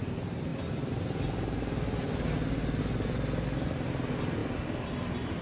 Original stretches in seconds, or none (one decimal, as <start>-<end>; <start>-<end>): 0.0-5.4